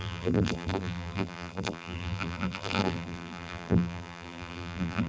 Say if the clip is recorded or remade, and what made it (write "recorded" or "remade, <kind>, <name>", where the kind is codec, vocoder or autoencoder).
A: remade, vocoder, BigVGAN v2